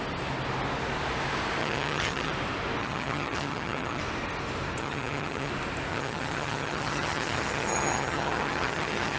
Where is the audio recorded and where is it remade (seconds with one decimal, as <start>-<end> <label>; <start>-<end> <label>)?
0.0-1.6 recorded; 1.6-2.3 remade; 2.3-2.8 recorded; 2.8-4.0 remade; 4.0-4.8 recorded; 4.8-5.5 remade; 5.5-5.9 recorded; 5.9-9.2 remade